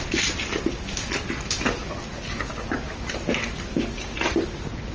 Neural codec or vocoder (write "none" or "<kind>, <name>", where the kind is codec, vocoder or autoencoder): none